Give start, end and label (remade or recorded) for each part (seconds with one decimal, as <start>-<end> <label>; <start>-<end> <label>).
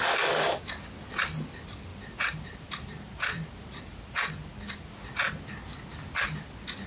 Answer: 0.0-1.9 recorded; 1.9-3.8 remade; 3.8-6.9 recorded